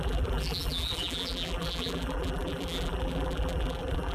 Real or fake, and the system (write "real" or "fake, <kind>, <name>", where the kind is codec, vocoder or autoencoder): fake, vocoder, BigVGAN v2